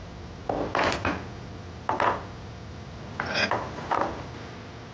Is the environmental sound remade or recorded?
recorded